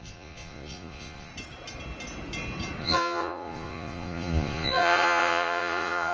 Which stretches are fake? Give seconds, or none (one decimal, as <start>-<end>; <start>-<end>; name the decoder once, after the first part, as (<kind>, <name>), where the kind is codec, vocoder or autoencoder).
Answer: 0.0-1.3 (vocoder, Vocos); 2.8-6.1